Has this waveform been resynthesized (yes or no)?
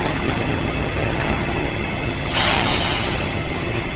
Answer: yes